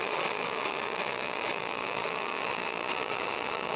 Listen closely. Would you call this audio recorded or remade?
remade